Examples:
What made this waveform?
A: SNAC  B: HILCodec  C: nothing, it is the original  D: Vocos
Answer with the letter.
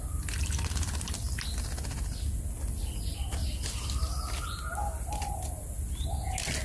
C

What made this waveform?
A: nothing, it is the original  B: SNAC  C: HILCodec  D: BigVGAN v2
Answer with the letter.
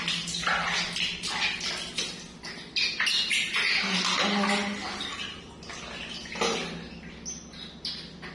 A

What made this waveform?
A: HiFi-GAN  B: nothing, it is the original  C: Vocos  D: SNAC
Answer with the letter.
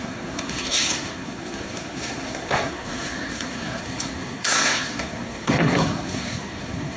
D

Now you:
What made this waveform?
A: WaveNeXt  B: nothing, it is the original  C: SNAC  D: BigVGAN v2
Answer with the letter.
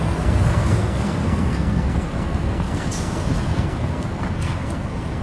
C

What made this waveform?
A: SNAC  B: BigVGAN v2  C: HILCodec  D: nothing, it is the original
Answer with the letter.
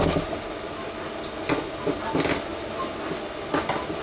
D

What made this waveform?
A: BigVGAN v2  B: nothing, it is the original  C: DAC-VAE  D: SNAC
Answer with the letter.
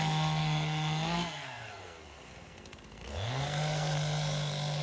D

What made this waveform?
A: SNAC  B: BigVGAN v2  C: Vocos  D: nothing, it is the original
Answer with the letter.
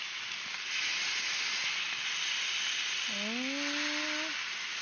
D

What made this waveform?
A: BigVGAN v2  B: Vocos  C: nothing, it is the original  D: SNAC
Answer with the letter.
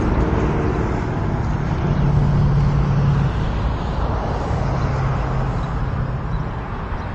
C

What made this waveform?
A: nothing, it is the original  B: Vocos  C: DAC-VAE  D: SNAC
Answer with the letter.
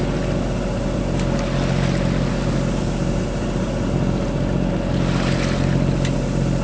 A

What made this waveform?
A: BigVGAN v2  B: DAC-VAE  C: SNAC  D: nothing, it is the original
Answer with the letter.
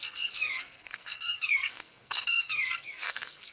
C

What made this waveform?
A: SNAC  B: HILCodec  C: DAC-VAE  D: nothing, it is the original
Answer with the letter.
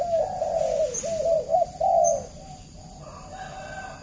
D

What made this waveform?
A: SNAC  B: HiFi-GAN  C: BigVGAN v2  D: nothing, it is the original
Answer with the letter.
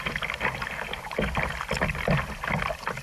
D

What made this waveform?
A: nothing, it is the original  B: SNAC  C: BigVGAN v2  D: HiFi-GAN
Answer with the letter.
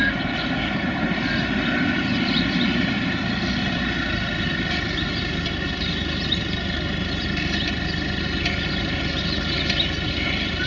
A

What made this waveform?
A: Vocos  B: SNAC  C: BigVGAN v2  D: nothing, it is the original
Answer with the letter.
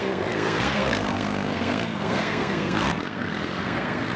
B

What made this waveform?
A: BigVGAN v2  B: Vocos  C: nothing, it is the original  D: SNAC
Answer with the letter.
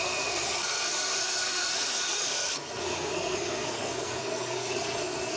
D